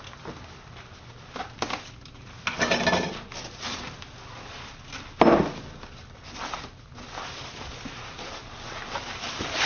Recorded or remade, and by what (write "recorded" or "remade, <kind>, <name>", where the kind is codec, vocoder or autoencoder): recorded